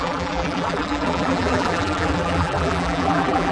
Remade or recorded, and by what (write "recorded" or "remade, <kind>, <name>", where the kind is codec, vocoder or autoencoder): remade, vocoder, BigVGAN v2